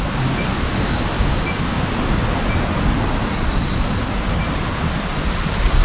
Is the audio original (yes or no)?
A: yes